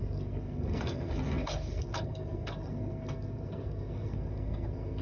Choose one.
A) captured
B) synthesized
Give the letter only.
B